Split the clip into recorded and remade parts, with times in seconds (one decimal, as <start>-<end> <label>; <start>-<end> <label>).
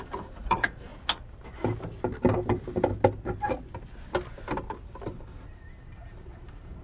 0.0-0.9 remade; 0.9-5.0 recorded; 5.0-6.8 remade